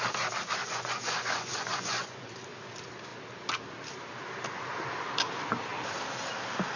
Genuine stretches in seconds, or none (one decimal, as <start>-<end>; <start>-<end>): 0.0-0.6; 2.3-6.8

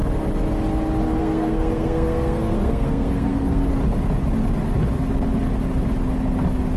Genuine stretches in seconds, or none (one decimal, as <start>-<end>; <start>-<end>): 0.0-1.2; 3.7-6.8

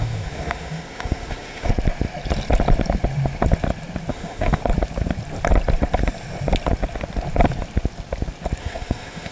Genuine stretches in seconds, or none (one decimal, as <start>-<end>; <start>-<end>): 1.7-4.1; 4.6-8.6

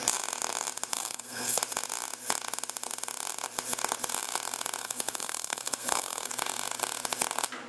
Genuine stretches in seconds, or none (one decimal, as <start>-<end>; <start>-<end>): 0.0-0.9; 1.6-4.8; 6.3-7.7